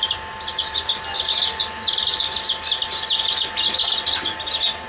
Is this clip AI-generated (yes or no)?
no